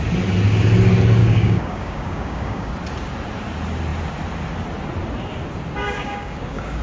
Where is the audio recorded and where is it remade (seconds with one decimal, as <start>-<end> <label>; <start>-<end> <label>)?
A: 0.0-1.2 recorded; 1.2-2.7 remade; 2.7-5.8 recorded; 5.8-6.8 remade